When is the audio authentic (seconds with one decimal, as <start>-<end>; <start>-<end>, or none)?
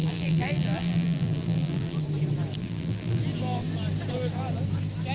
2.0-2.6; 3.2-5.1